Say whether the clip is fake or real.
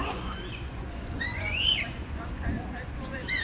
fake